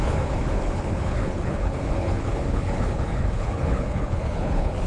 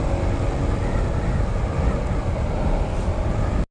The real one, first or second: second